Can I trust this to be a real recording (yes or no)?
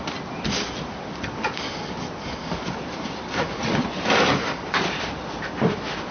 no